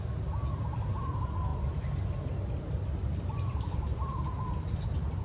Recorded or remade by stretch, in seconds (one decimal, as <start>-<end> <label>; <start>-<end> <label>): 0.0-5.2 recorded